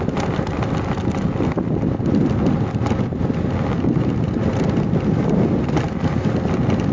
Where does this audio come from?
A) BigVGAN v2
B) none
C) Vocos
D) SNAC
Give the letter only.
B